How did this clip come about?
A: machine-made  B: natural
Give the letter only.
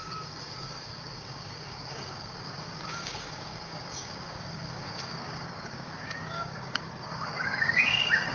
A